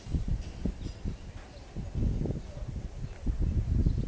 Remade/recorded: recorded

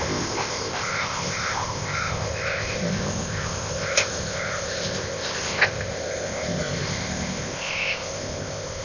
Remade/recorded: remade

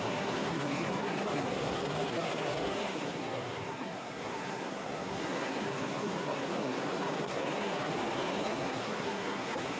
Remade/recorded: remade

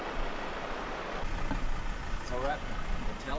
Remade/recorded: recorded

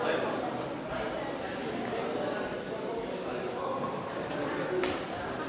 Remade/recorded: recorded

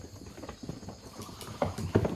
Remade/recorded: recorded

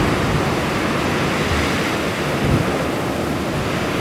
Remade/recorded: recorded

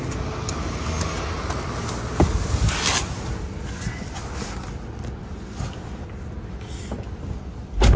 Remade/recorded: recorded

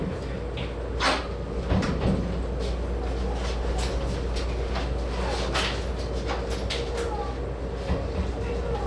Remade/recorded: recorded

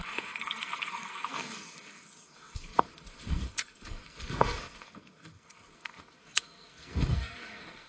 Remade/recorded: remade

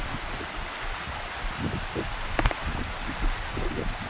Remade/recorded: recorded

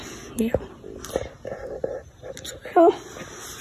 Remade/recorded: recorded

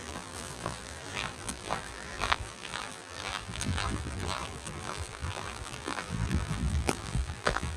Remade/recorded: remade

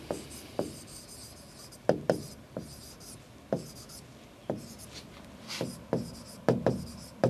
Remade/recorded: recorded